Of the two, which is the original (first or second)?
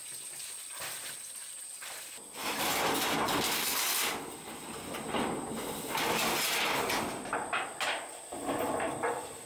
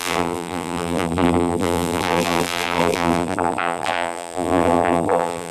first